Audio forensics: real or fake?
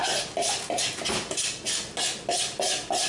real